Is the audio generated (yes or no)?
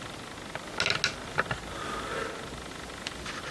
no